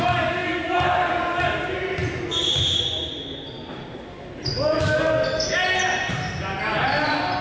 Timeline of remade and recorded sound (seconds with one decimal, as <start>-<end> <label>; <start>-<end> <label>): 0.0-7.4 recorded